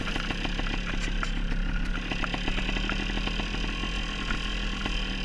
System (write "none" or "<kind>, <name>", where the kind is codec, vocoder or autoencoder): none